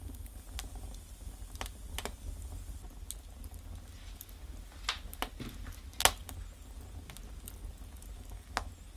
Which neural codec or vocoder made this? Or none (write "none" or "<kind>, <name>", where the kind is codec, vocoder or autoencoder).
none